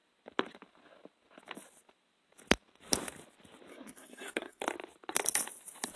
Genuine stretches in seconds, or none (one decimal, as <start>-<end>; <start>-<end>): 0.0-3.7; 4.6-6.0